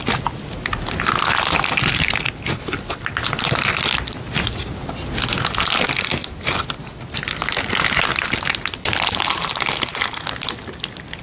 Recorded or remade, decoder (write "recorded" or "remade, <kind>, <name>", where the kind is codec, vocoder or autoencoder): recorded